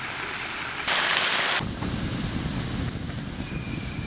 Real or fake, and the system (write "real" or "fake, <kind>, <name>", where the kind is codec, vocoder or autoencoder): real